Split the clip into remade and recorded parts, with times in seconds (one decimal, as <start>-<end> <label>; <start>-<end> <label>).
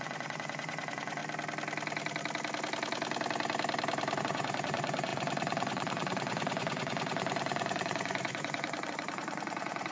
0.0-1.2 remade; 1.2-4.2 recorded; 4.2-9.9 remade